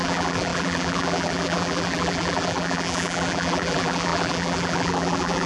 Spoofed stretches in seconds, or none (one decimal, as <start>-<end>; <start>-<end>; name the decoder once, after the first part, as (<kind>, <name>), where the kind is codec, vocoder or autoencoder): 0.0-5.5 (vocoder, BigVGAN v2)